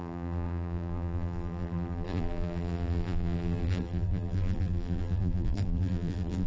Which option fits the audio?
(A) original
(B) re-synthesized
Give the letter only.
B